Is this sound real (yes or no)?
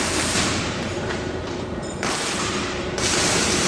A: no